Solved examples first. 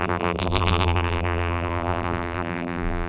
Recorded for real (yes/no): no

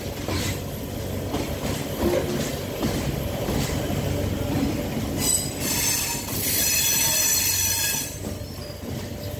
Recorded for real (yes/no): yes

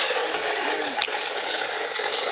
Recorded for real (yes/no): no